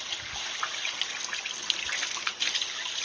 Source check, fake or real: real